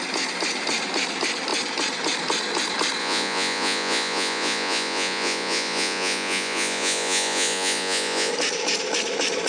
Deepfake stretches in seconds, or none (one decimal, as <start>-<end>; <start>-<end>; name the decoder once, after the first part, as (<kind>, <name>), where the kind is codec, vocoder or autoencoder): 3.0-8.3 (vocoder, Vocos)

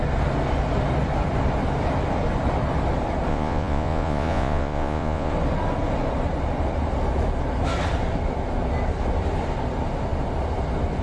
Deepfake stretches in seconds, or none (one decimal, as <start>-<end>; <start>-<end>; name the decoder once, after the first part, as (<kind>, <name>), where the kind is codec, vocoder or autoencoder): 3.3-5.3 (vocoder, Vocos)

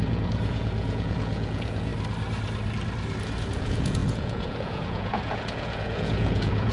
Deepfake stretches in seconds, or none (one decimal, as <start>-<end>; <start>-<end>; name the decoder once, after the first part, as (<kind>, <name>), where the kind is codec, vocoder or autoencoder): 0.0-1.9 (vocoder, Vocos); 3.5-6.7

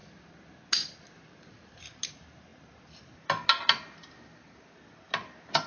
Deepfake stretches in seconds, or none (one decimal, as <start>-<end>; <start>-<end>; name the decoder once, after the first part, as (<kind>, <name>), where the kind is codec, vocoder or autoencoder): none

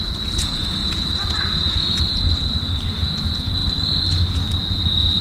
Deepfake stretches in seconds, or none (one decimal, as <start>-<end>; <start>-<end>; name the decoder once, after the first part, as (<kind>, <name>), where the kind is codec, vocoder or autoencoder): 0.0-3.6 (vocoder, Vocos); 4.7-5.2